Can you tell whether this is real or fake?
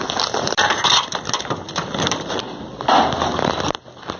real